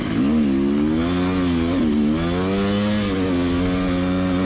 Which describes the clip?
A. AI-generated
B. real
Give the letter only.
B